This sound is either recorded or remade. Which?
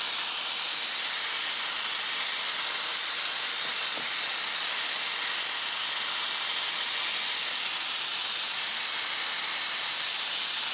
remade